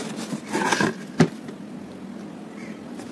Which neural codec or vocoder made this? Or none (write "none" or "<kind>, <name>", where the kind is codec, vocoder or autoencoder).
none